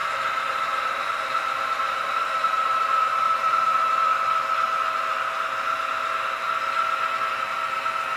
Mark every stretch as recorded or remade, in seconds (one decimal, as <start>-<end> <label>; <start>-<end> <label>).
0.0-4.2 remade; 4.2-8.2 recorded

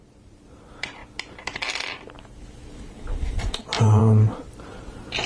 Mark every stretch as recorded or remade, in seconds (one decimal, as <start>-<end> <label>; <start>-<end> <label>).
0.0-1.0 remade; 1.0-3.3 recorded; 3.3-4.0 remade; 4.0-4.6 recorded; 4.6-5.3 remade

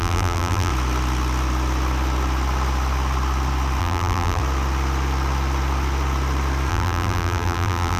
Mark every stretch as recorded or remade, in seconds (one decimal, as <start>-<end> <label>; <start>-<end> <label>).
0.0-0.7 remade; 0.7-3.8 recorded; 3.8-4.4 remade; 4.4-6.7 recorded; 6.7-8.0 remade

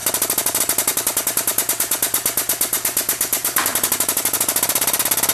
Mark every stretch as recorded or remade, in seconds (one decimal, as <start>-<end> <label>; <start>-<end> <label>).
0.0-5.3 remade